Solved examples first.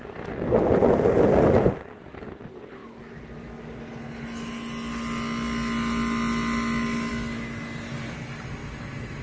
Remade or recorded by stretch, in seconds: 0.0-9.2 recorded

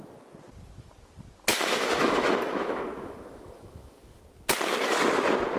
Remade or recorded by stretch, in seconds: 0.0-1.5 recorded; 1.5-4.2 remade; 4.2-5.6 recorded